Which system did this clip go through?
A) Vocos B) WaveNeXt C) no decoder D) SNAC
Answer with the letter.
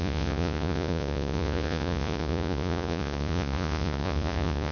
A